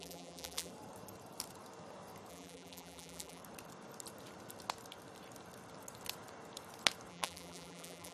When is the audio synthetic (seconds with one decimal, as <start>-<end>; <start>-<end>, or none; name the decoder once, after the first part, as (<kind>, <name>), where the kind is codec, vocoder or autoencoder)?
0.0-0.7 (vocoder, BigVGAN v2); 2.3-3.4; 7.1-8.1